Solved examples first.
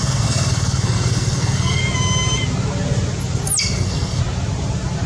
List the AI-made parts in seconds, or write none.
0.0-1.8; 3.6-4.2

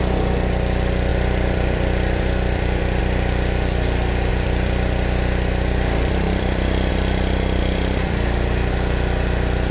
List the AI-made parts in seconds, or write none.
1.1-3.0; 4.3-6.9; 7.6-8.7

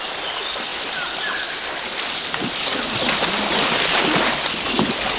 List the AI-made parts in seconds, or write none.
none

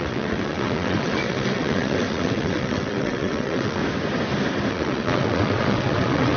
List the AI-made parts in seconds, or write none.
0.0-3.8; 4.7-6.4